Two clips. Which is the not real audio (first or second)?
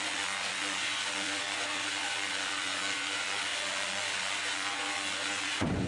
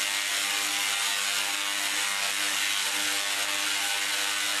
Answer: first